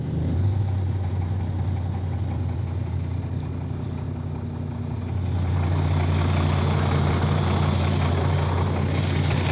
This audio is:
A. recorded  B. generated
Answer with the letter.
A